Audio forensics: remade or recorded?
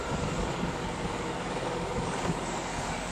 remade